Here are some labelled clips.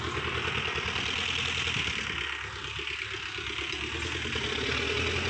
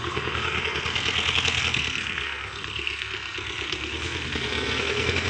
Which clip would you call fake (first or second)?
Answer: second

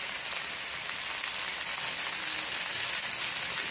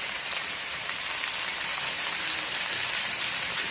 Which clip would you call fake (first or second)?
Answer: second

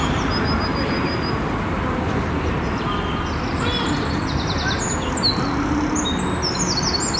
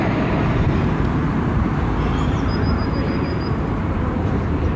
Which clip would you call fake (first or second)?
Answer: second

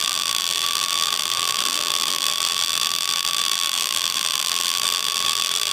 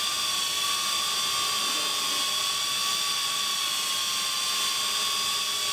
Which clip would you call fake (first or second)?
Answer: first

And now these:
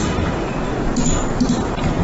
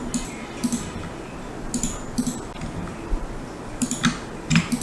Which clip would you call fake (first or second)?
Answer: first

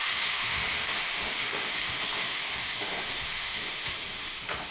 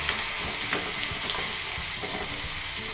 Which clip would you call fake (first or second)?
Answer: first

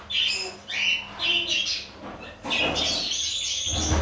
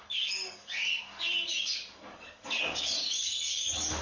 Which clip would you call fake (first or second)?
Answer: second